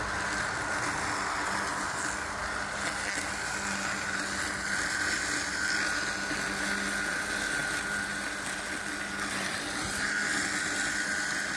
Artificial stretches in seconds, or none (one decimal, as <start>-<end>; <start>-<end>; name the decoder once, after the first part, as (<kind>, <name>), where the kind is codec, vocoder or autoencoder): none